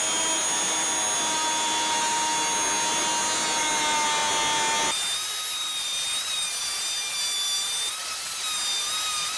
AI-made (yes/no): no